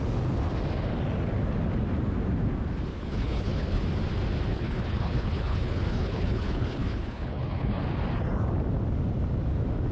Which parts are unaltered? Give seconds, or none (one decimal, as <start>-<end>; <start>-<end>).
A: 0.0-2.9; 3.8-4.5; 7.8-9.9